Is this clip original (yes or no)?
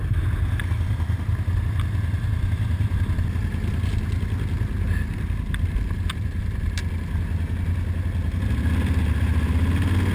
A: yes